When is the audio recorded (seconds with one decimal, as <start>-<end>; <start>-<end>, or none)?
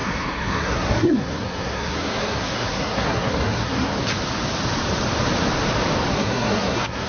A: 3.9-6.1